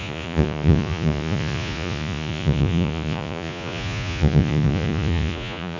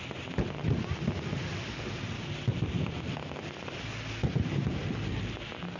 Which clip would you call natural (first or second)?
second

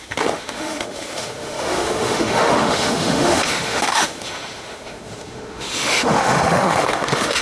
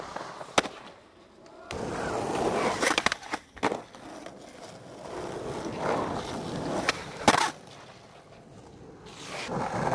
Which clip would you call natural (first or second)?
second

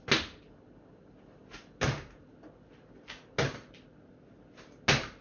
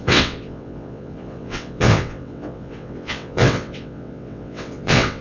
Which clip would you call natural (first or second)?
first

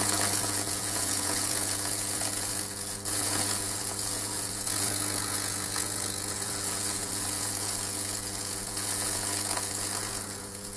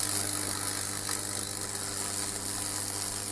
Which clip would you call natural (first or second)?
second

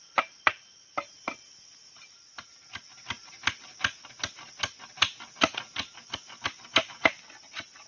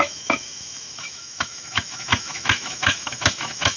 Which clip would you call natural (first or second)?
first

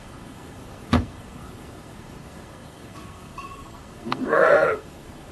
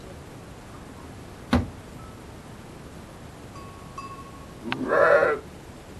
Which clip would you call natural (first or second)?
second